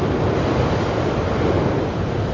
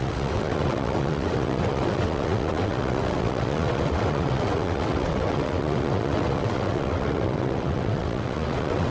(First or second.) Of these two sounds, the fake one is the second